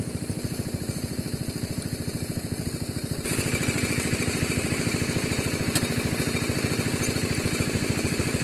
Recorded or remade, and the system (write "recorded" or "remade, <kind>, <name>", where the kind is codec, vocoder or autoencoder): remade, vocoder, BigVGAN v2